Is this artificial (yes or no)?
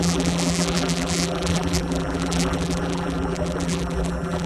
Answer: yes